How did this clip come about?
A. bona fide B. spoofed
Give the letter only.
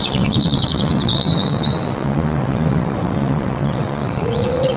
B